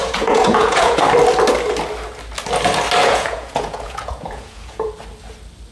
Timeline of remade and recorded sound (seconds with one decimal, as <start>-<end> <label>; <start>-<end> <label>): 0.0-1.0 remade; 1.0-3.0 recorded; 3.0-4.9 remade; 4.9-5.7 recorded